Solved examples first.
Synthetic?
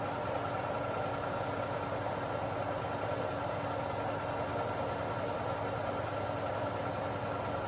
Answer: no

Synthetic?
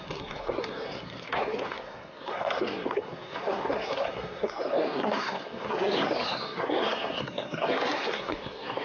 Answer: yes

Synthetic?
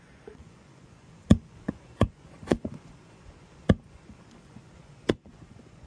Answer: yes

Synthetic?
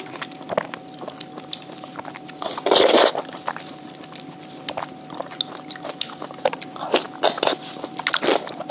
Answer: no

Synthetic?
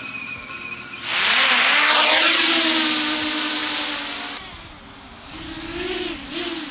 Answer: no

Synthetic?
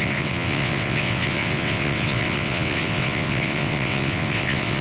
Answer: yes